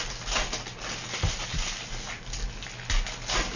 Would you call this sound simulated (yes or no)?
no